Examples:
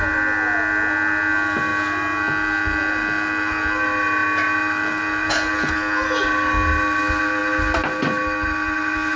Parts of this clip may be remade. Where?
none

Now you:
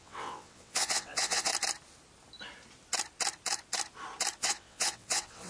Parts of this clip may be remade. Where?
0.0-1.5 (vocoder, WaveNeXt); 4.4-5.5

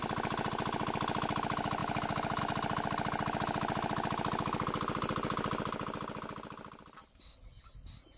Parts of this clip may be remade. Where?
none